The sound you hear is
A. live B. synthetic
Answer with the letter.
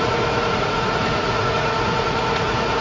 B